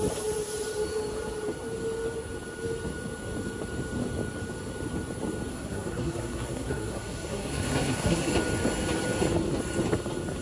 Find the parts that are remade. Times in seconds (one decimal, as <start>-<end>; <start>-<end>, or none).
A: 5.5-8.3

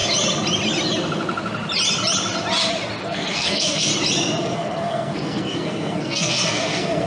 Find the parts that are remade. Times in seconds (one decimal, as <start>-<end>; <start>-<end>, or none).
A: 3.0-3.9; 4.4-7.1

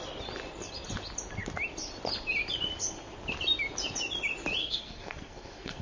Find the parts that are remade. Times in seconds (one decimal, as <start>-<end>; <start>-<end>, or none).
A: 4.6-5.8

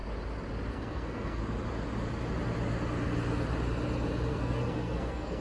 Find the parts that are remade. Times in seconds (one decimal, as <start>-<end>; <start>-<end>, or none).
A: 0.7-1.4; 4.3-5.4

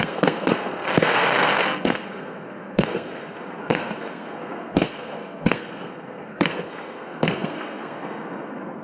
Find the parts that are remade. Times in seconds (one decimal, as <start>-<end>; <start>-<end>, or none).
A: 0.0-8.8

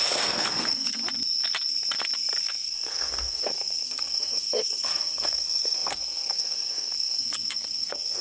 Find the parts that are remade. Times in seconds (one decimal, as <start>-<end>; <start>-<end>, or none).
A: 0.0-1.0; 2.4-8.2

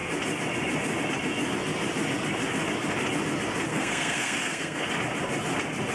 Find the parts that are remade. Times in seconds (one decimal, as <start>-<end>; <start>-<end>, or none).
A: 3.7-4.9

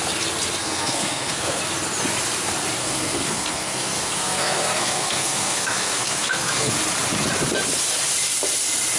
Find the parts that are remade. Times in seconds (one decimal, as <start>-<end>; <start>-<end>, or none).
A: 0.6-1.6; 2.8-6.7